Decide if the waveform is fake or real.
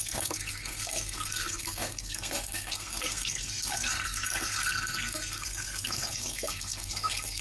fake